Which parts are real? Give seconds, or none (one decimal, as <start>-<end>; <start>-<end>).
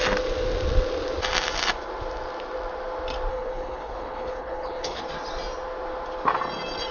0.0-3.3; 5.0-6.9